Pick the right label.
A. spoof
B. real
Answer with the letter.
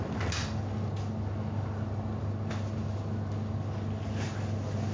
B